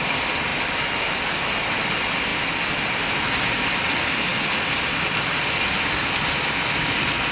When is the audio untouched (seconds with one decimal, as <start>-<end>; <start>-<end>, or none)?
0.0-7.3